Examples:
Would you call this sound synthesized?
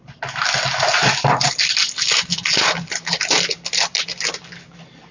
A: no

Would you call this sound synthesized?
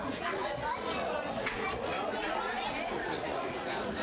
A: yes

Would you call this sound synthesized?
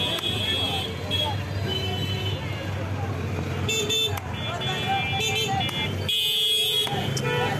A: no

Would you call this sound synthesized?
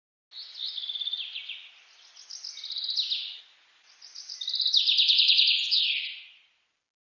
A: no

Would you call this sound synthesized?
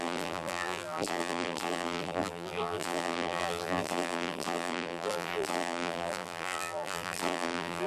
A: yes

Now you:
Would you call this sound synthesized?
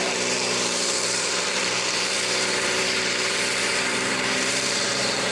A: yes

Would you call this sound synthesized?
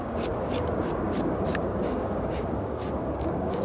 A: yes